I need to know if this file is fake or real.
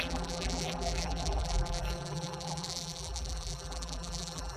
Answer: fake